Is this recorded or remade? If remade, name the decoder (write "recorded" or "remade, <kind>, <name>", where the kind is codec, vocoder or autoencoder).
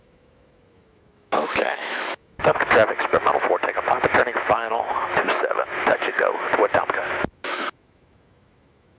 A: remade, autoencoder, DAC-VAE